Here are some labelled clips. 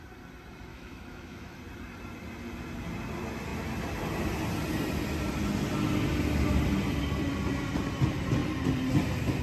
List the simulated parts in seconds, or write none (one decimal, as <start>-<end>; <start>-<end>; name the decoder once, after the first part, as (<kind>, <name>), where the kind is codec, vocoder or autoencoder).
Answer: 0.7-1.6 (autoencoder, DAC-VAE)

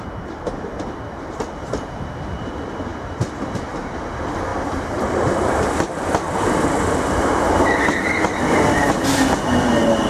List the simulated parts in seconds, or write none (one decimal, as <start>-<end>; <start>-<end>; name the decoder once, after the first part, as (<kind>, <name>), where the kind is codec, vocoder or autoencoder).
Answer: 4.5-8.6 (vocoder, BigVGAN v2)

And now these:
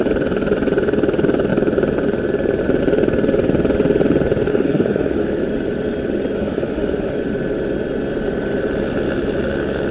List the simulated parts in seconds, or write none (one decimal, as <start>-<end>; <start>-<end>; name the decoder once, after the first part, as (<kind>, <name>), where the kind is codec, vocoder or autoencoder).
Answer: 4.5-5.3 (autoencoder, DAC-VAE); 6.4-7.2

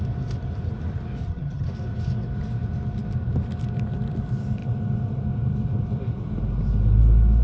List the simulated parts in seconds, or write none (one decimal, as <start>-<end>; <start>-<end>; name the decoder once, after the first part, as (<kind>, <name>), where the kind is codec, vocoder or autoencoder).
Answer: 1.2-1.7 (vocoder, HiFi-GAN)

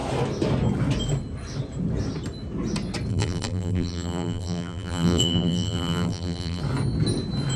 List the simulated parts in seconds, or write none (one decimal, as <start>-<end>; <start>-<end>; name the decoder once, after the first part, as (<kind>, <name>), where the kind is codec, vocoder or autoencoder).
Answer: 3.1-6.6 (vocoder, BigVGAN v2)

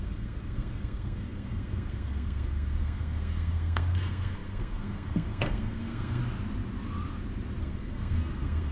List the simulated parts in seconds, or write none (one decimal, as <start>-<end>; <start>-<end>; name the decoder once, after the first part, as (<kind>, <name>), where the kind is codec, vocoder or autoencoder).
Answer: 0.0-6.2 (codec, SNAC); 7.6-8.7